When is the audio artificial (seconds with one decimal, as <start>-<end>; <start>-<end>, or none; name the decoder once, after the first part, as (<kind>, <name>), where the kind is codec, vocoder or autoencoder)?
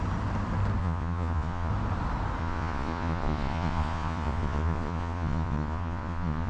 0.8-1.7 (vocoder, Vocos); 2.4-6.5